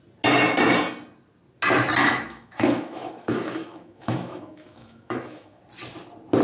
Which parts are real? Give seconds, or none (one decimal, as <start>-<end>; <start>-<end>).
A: 0.0-2.0; 5.6-6.4